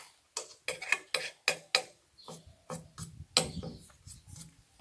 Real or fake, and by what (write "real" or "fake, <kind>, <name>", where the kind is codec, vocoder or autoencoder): real